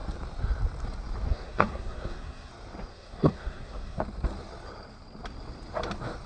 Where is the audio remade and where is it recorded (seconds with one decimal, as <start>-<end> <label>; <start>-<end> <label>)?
0.0-1.3 recorded; 1.3-2.5 remade; 2.5-2.9 recorded; 2.9-4.0 remade; 4.0-6.3 recorded